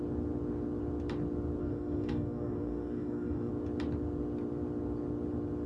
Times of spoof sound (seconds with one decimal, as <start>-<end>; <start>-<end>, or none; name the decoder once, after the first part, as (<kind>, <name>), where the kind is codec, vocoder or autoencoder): 1.6-3.5 (codec, DAC)